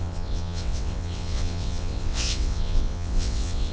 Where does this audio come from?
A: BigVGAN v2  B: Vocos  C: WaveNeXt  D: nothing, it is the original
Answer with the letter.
C